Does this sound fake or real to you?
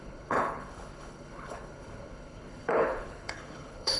fake